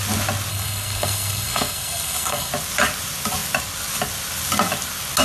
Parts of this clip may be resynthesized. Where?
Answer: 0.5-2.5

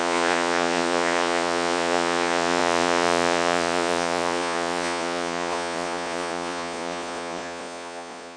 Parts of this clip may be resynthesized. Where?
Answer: 0.0-8.4

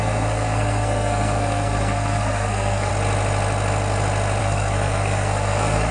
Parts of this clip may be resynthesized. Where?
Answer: 0.0-2.9; 4.4-5.9